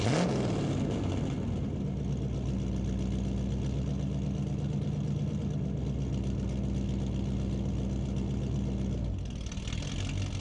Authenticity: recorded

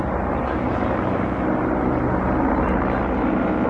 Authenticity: recorded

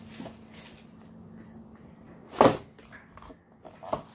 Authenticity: recorded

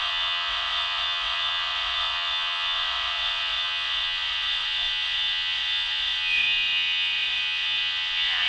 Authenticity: remade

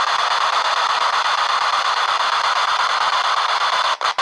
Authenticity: recorded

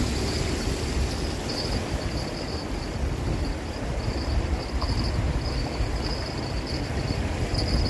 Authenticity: recorded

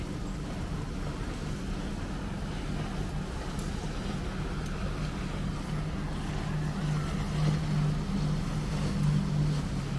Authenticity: recorded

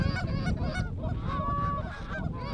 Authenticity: recorded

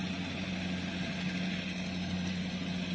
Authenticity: recorded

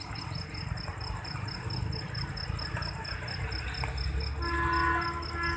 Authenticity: recorded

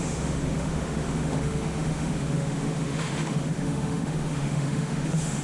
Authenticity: remade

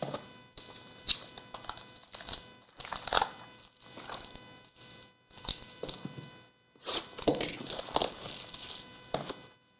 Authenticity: recorded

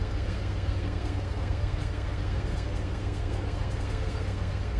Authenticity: remade